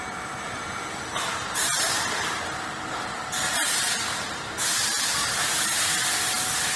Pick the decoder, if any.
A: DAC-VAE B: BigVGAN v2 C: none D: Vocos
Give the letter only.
B